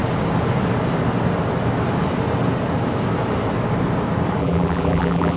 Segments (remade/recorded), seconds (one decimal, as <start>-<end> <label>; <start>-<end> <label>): 0.0-4.4 recorded; 4.4-5.4 remade